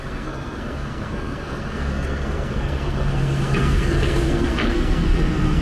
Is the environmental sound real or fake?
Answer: fake